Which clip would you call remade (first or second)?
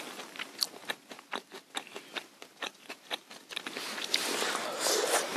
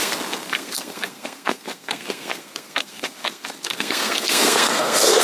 second